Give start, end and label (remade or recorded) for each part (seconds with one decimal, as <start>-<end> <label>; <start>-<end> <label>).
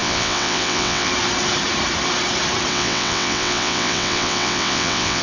0.0-1.1 remade; 1.1-2.7 recorded; 2.7-5.2 remade